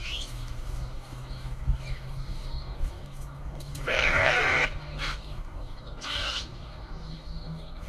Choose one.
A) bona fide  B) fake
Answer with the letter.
B